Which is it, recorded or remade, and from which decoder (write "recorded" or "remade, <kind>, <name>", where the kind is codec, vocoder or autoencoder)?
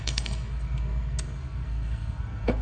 remade, codec, SNAC